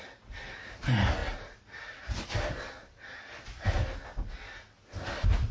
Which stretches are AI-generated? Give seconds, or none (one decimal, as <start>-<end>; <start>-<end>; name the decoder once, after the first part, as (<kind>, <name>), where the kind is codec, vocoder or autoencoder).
1.2-3.1 (vocoder, BigVGAN v2)